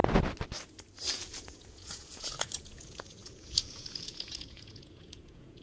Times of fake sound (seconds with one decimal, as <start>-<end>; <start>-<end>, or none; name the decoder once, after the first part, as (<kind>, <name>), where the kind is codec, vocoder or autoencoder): 1.1-5.6 (vocoder, Vocos)